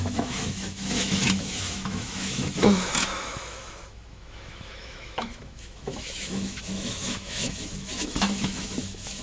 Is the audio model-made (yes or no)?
yes